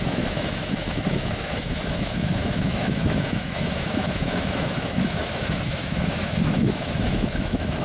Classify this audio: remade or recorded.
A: remade